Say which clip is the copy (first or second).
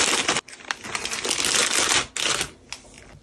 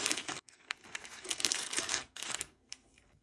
second